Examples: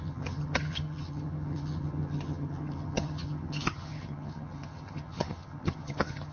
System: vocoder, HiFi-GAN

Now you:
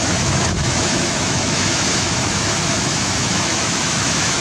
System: autoencoder, DAC-VAE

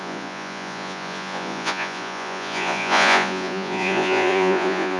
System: vocoder, Vocos